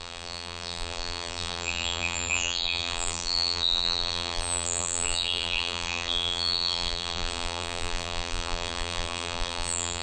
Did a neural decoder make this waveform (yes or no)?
yes